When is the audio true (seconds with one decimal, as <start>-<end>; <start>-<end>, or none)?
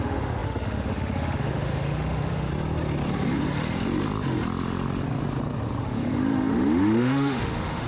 2.5-5.8